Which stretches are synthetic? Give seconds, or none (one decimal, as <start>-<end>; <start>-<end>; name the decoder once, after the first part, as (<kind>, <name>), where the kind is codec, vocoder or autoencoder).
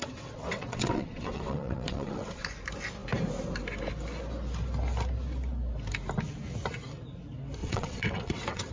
0.0-2.4 (vocoder, WaveNeXt); 7.6-8.7